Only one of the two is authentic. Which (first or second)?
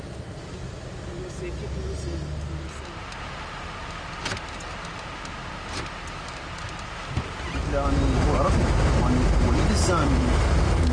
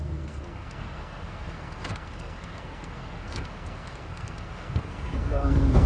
first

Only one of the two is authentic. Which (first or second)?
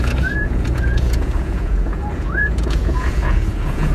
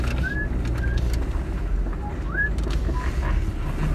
second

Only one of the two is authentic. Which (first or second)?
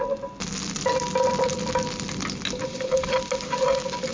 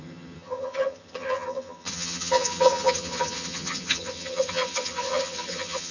first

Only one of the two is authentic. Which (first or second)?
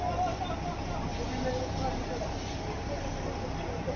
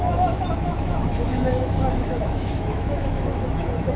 first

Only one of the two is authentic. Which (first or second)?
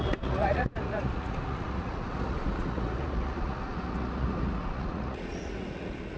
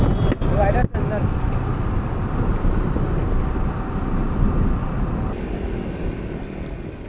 second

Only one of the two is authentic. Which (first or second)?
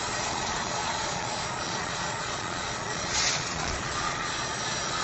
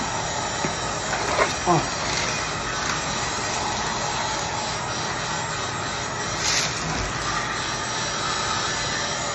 second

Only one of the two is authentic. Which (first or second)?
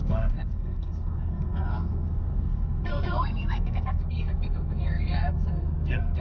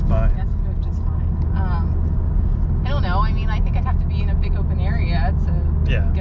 second